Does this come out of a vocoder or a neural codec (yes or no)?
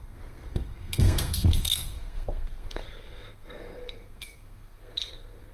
yes